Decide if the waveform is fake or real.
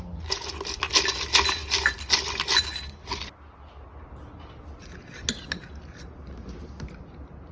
real